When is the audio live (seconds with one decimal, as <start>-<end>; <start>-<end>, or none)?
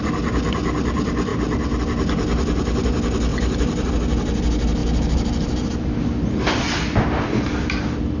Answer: 0.0-1.3; 1.8-3.3; 3.9-4.8; 6.8-8.2